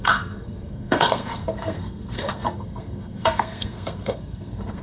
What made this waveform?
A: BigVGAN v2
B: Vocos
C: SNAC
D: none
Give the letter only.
C